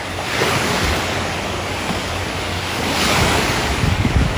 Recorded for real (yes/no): no